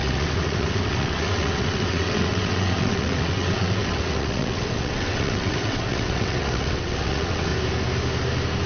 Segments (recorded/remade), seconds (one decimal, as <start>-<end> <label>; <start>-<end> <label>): 0.0-7.5 remade; 7.5-8.7 recorded